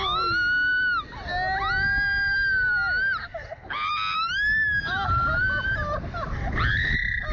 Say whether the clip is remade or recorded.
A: recorded